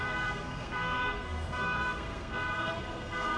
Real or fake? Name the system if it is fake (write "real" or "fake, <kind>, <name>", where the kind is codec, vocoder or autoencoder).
fake, codec, SNAC